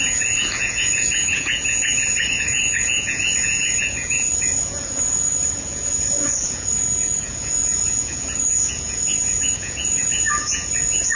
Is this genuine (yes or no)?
no